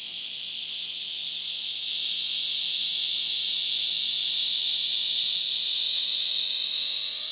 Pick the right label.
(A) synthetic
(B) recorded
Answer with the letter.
A